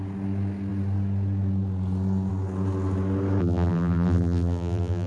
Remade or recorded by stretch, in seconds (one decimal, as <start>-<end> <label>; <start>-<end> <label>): 0.0-3.4 recorded; 3.4-5.1 remade